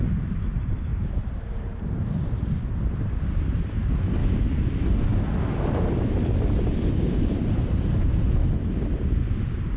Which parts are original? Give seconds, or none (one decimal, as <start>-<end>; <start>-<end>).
4.2-7.1; 8.4-9.1